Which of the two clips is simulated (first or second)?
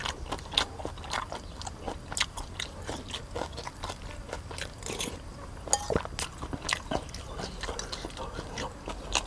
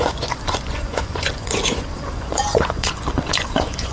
second